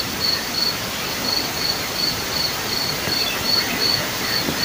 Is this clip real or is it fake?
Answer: real